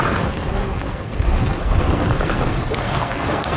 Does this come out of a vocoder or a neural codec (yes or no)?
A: yes